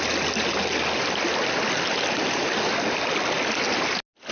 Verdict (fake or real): real